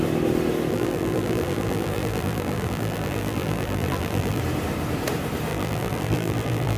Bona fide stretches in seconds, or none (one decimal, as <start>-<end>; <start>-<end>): 0.0-0.7; 4.4-5.5